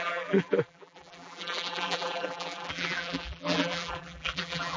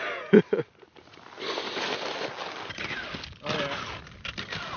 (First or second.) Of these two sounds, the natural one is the second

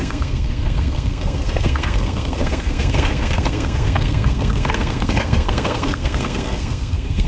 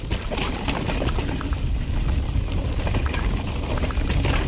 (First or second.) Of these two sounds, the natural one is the second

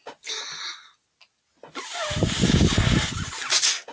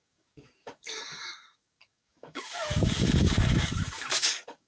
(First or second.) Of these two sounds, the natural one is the first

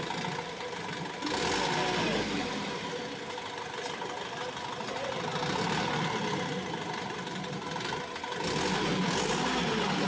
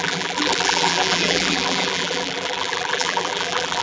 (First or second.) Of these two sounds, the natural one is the first